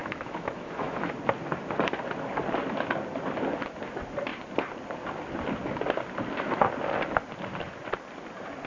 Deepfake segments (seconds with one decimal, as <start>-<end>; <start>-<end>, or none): 0.0-1.1